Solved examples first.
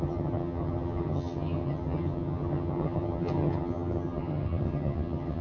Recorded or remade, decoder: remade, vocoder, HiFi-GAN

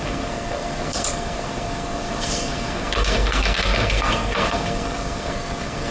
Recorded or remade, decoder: remade, codec, SNAC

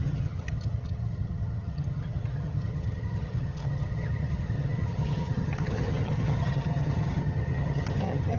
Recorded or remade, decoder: remade, vocoder, HiFi-GAN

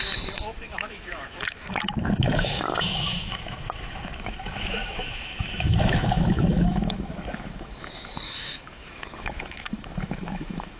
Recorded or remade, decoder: remade, autoencoder, DAC-VAE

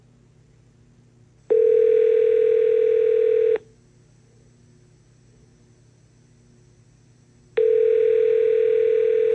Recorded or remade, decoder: recorded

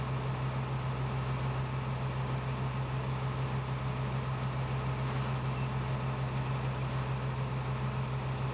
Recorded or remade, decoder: recorded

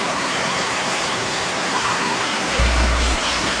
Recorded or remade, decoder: remade, codec, SNAC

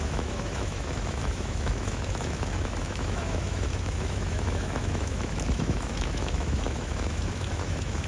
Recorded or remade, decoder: remade, autoencoder, DAC-VAE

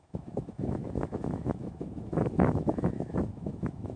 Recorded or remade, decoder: remade, autoencoder, DAC-VAE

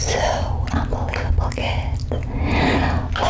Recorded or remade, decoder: recorded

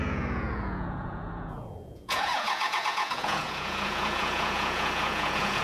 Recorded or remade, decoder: remade, vocoder, Vocos